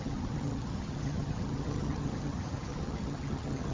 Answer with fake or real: fake